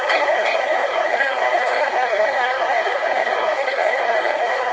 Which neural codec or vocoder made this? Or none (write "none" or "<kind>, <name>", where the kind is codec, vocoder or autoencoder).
codec, SNAC